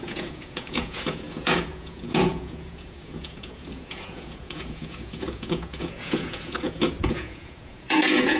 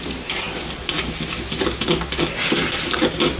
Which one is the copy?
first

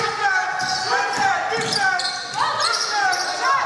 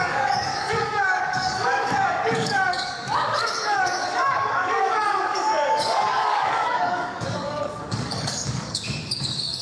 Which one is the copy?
second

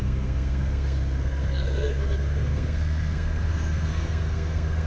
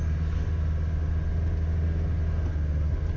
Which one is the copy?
first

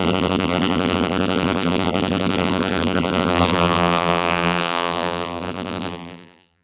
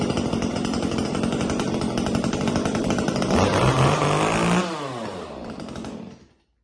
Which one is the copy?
first